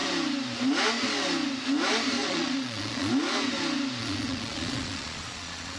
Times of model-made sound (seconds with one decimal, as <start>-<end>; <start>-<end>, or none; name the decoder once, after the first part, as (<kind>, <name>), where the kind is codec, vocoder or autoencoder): 2.2-3.1 (vocoder, Vocos); 4.0-5.8